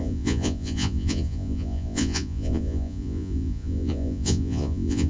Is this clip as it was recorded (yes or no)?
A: no